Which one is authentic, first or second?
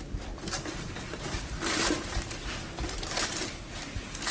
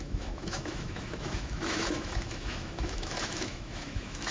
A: first